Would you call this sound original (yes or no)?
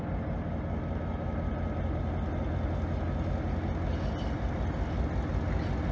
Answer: yes